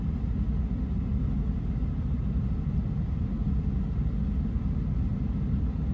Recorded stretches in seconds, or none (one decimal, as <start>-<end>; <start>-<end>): 0.0-5.9